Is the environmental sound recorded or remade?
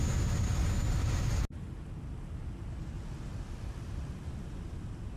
recorded